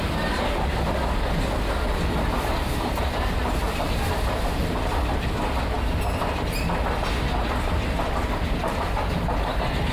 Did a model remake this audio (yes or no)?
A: no